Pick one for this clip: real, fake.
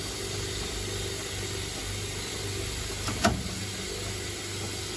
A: real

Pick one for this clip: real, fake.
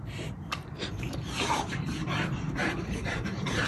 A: fake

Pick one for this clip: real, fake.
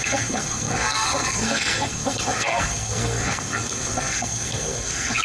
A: fake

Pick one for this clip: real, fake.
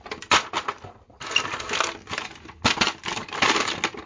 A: real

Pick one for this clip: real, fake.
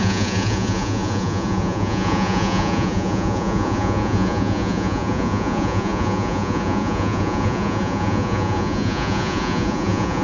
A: fake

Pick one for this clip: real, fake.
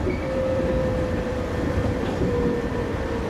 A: fake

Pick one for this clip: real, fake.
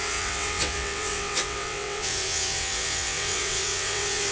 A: fake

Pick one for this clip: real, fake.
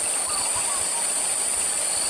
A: real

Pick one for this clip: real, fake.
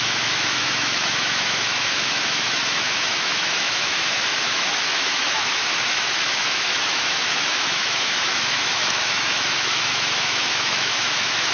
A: fake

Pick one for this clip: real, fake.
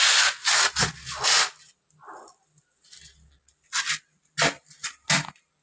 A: real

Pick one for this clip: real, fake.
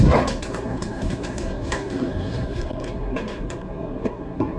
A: fake